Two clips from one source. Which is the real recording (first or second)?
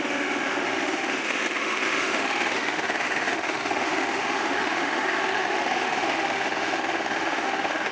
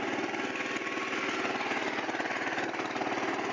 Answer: second